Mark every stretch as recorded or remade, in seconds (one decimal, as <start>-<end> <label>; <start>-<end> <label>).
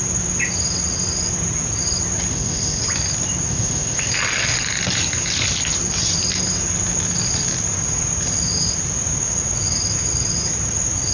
0.0-2.3 recorded; 2.3-2.8 remade; 2.8-3.5 recorded; 3.5-4.1 remade; 4.1-11.1 recorded